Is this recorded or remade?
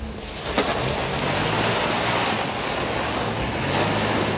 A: recorded